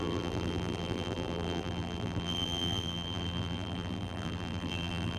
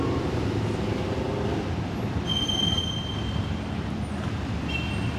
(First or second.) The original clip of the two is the second